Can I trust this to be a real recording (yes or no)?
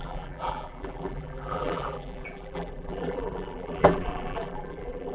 no